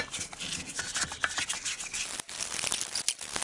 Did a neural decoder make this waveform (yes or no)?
no